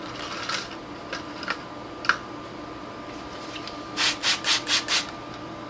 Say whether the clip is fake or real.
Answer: real